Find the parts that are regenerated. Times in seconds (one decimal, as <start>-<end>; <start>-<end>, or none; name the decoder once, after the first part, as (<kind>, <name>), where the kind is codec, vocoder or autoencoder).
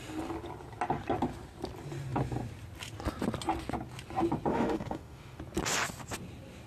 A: 4.5-5.4 (autoencoder, DAC-VAE)